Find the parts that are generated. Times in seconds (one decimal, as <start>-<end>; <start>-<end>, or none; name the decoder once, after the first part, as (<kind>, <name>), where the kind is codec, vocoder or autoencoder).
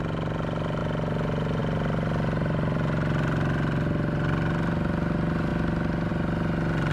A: none